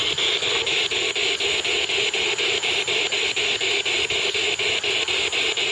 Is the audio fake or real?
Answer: real